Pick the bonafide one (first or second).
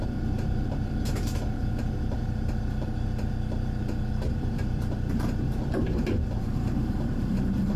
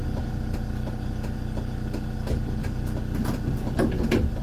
second